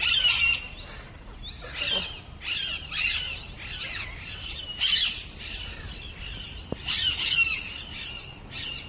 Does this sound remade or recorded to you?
recorded